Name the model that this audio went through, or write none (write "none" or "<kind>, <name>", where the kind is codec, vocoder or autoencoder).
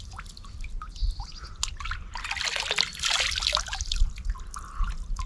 none